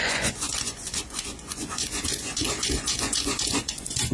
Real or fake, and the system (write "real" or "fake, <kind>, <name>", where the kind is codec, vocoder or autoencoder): fake, vocoder, Vocos